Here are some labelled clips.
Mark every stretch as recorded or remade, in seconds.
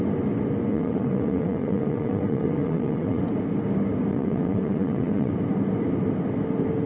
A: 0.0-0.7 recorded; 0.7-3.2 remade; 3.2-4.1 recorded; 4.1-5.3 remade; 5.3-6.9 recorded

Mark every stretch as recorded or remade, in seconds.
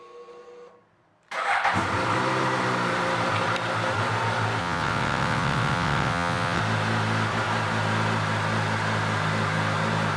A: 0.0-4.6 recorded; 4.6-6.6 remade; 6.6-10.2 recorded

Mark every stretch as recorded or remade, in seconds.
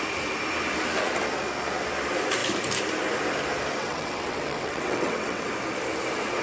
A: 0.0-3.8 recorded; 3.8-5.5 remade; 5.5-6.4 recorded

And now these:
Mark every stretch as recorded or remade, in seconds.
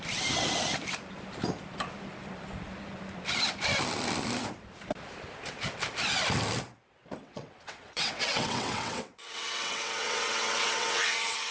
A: 0.0-7.2 recorded; 7.2-11.5 remade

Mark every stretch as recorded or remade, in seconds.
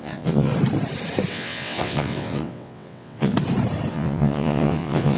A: 0.0-0.5 remade; 0.5-1.3 recorded; 1.3-3.3 remade; 3.3-3.9 recorded; 3.9-5.2 remade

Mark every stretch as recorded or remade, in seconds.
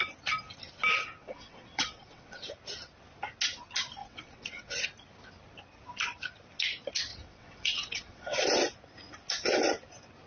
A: 0.0-1.2 recorded; 1.2-2.4 remade; 2.4-4.0 recorded; 4.0-4.8 remade; 4.8-7.1 recorded; 7.1-8.4 remade; 8.4-10.3 recorded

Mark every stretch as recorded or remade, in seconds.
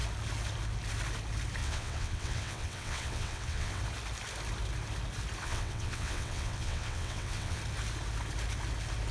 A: 0.0-1.6 recorded; 1.6-3.8 remade; 3.8-5.4 recorded; 5.4-7.6 remade; 7.6-9.1 recorded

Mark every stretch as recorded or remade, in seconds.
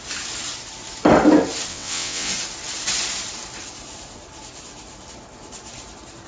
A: 0.0-1.7 recorded; 1.7-2.3 remade; 2.3-6.3 recorded